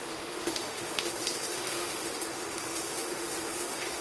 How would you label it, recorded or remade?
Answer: remade